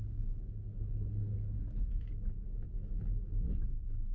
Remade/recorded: recorded